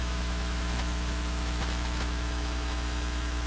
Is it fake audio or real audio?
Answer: fake